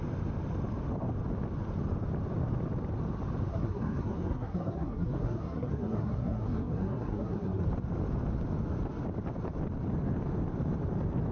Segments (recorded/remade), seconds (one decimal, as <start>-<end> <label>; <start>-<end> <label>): 0.0-3.5 recorded; 3.5-7.7 remade; 7.7-11.3 recorded